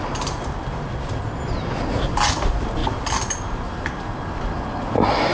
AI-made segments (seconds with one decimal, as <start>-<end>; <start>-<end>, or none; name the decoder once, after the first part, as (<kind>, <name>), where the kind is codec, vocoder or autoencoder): none